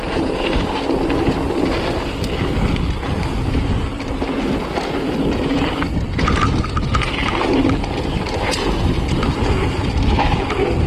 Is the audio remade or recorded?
recorded